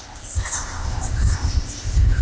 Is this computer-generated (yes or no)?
yes